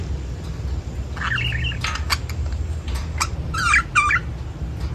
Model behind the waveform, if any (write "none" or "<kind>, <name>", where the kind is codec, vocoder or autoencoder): none